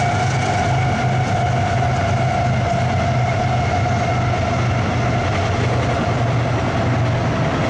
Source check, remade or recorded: recorded